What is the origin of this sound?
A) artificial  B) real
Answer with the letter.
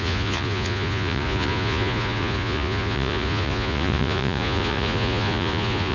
A